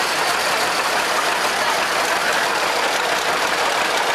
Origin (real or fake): real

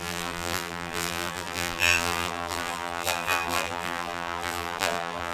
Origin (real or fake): fake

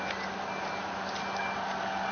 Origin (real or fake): real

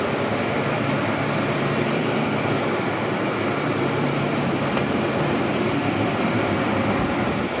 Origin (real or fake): fake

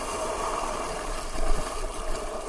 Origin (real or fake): real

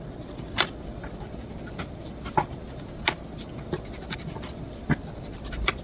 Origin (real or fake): real